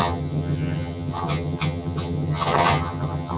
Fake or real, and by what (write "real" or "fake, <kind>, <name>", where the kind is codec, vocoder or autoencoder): fake, vocoder, HiFi-GAN